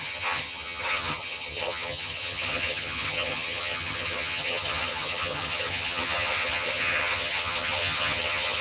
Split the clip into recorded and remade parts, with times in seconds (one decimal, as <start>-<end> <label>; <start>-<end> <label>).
0.0-8.6 remade